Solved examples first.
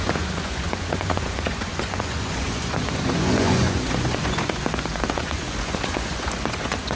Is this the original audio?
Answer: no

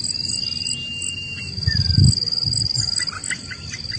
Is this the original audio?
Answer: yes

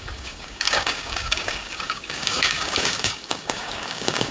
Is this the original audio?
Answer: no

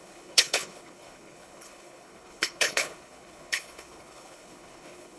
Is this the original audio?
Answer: no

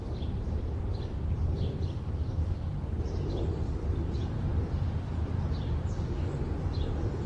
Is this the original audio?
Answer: no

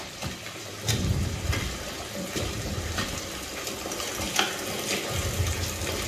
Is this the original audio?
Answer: no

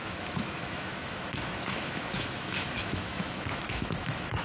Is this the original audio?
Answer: no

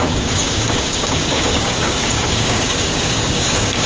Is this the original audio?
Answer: no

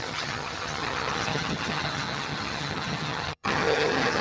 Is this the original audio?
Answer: no